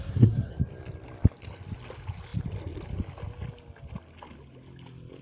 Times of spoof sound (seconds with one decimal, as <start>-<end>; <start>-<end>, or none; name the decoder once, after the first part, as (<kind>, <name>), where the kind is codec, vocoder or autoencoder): 0.0-0.5 (codec, SNAC)